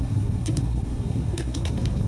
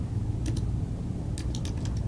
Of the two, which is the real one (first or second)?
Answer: second